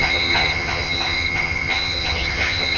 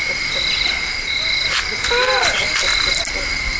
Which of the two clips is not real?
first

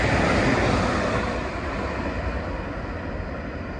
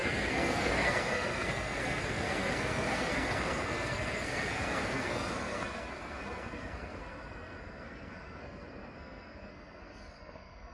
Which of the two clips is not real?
second